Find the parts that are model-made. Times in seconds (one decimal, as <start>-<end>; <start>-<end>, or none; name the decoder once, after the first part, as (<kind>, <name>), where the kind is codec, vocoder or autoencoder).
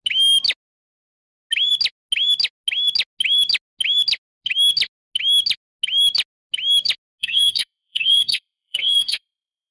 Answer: 7.2-9.7 (codec, SNAC)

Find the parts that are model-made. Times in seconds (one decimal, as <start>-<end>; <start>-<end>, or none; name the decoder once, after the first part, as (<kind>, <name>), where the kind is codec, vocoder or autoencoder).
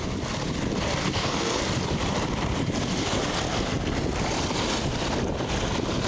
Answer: 1.0-1.6 (codec, SNAC)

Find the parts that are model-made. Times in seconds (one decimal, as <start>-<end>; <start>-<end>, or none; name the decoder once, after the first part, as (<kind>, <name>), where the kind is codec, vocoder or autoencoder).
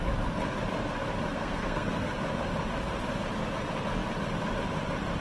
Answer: 1.3-2.1 (codec, SNAC)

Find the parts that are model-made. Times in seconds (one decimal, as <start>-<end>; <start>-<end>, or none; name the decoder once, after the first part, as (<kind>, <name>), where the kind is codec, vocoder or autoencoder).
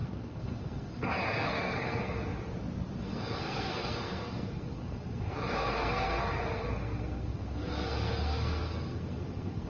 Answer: 0.0-2.3 (codec, SNAC); 3.0-9.7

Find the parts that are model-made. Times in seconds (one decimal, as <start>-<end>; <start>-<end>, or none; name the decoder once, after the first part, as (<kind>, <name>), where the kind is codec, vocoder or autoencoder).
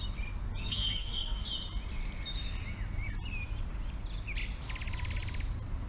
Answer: 0.6-1.5 (codec, SNAC)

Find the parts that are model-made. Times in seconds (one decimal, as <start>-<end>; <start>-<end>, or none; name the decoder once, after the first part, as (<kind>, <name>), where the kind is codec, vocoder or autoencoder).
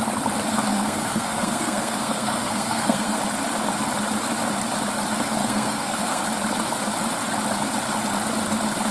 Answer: 0.7-3.2 (codec, SNAC); 5.4-6.2